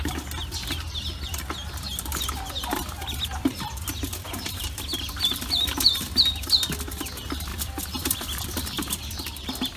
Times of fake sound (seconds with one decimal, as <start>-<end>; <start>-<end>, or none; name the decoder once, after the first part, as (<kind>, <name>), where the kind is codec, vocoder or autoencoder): 4.9-5.4 (vocoder, BigVGAN v2); 7.5-9.0